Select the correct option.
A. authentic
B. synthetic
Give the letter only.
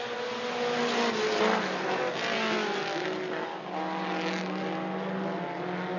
A